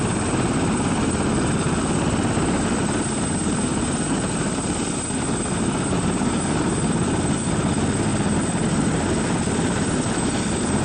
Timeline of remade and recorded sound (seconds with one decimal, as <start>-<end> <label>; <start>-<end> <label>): 0.0-10.8 recorded

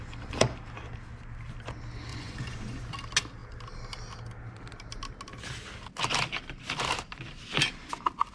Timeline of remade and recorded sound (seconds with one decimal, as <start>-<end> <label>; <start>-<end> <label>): 0.0-2.1 recorded; 2.1-2.9 remade; 2.9-8.3 recorded

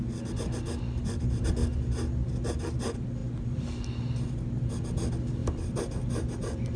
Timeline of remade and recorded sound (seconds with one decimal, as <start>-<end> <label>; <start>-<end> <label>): 0.0-6.8 recorded

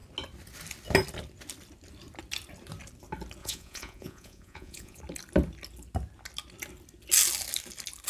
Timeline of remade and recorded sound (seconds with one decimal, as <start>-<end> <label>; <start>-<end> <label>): 0.0-3.4 recorded; 3.4-5.0 remade; 5.0-8.1 recorded

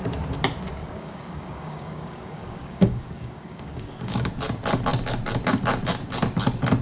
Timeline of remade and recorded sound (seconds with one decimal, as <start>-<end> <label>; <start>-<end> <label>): 0.0-0.8 recorded; 0.8-4.3 remade; 4.3-6.8 recorded

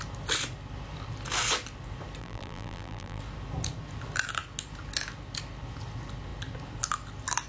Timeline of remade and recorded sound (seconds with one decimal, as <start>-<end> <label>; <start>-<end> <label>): 0.0-2.2 recorded; 2.2-3.2 remade; 3.2-7.5 recorded

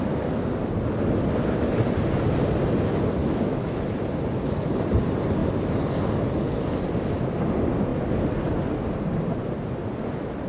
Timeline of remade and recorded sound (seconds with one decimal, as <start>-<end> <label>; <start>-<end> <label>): 0.0-3.2 recorded; 3.2-3.8 remade; 3.8-10.5 recorded

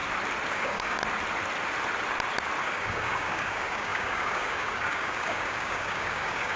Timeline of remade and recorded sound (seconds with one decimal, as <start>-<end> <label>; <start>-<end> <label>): 0.0-0.5 recorded; 0.5-1.0 remade; 1.0-2.6 recorded; 2.6-6.6 remade